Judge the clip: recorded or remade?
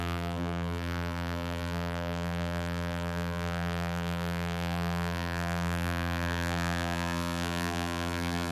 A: remade